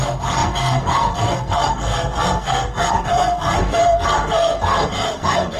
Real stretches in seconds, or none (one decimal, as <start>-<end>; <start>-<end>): none